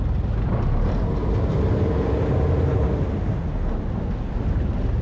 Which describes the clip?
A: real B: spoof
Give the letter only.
A